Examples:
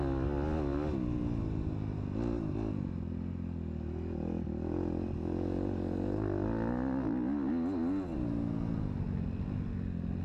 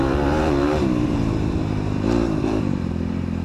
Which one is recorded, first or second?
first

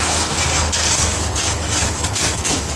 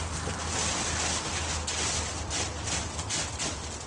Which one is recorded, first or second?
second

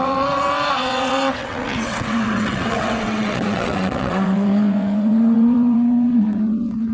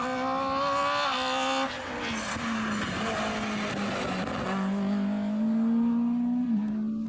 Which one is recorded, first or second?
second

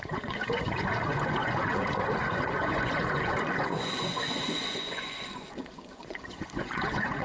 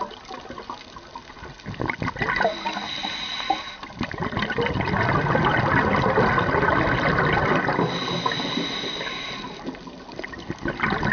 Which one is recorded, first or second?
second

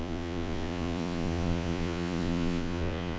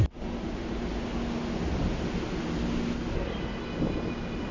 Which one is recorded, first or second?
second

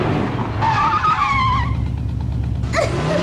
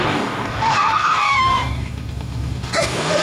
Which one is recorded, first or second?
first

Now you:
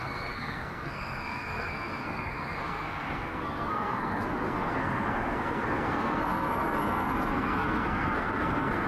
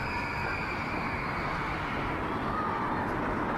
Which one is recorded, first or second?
second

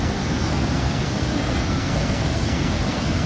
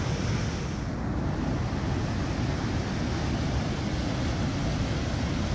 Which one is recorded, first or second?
second